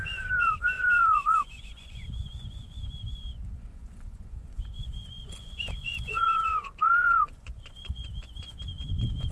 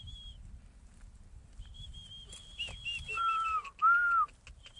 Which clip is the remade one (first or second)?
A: first